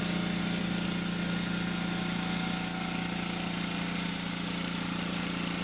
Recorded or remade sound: recorded